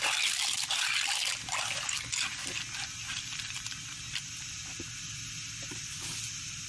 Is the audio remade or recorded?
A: recorded